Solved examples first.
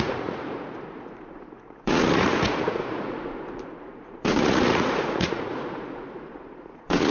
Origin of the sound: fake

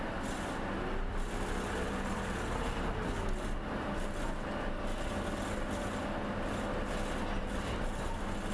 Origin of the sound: real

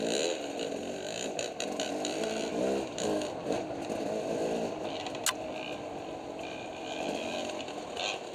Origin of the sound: real